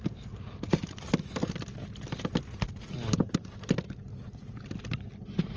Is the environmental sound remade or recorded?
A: recorded